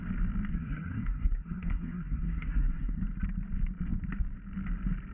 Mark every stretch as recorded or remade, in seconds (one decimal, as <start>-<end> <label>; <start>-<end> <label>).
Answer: 0.0-0.5 recorded; 0.5-3.0 remade; 3.0-5.1 recorded